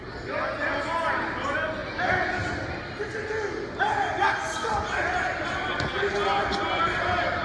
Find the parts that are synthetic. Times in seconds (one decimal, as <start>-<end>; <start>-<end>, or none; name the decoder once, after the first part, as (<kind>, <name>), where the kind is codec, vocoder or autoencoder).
none